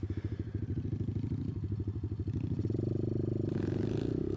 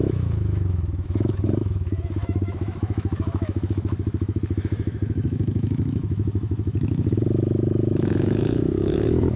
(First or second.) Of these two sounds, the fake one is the second